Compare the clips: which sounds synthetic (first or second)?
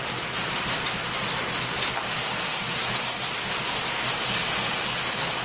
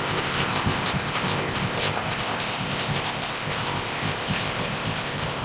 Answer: second